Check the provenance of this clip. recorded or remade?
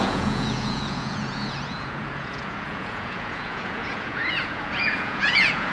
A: remade